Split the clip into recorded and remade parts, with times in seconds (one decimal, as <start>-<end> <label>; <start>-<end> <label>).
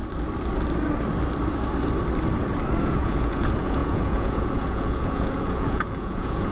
0.0-2.8 recorded; 2.8-6.5 remade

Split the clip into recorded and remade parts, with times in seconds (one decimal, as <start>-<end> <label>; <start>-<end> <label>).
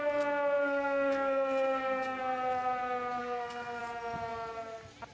0.0-0.6 recorded; 0.6-2.2 remade; 2.2-3.2 recorded; 3.2-3.8 remade; 3.8-5.1 recorded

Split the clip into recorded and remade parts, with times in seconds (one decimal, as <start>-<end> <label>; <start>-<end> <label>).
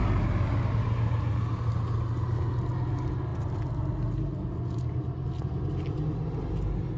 0.0-7.0 recorded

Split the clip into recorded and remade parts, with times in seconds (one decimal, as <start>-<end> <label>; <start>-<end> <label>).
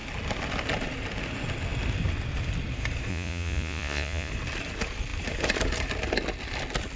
0.0-3.1 recorded; 3.1-4.3 remade; 4.3-7.0 recorded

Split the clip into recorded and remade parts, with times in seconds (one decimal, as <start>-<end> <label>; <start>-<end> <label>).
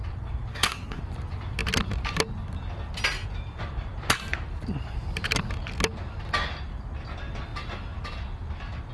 0.0-0.5 recorded; 0.5-1.0 remade; 1.0-8.9 recorded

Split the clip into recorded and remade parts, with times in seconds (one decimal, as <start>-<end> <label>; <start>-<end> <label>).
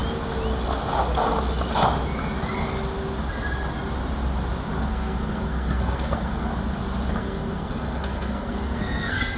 0.0-4.9 recorded; 4.9-6.5 remade; 6.5-7.1 recorded; 7.1-9.4 remade